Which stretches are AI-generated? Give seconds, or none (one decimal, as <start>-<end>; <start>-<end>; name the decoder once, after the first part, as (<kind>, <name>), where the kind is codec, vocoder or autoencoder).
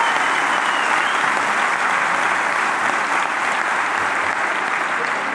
none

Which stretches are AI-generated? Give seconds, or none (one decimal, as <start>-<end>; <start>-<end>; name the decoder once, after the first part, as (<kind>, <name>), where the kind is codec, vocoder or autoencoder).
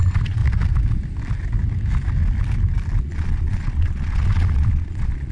0.0-0.4 (vocoder, Vocos); 3.0-5.3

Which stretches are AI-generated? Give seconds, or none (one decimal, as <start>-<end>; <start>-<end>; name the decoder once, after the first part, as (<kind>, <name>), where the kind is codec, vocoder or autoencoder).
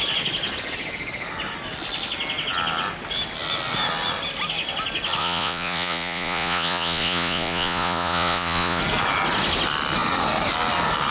5.2-8.8 (vocoder, Vocos)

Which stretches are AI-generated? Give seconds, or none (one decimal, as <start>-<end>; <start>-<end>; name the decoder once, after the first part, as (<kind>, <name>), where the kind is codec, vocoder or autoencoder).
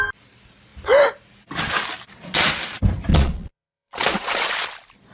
3.1-4.4 (vocoder, Vocos)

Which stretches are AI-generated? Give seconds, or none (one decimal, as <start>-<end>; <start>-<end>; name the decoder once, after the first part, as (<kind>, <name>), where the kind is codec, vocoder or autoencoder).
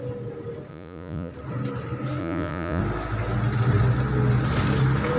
0.7-1.3 (vocoder, Vocos); 2.2-2.8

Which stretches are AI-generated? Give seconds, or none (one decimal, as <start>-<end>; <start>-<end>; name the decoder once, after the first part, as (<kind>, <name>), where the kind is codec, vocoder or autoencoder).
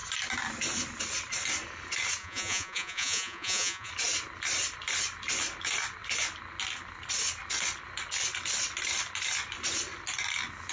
2.2-3.9 (vocoder, Vocos)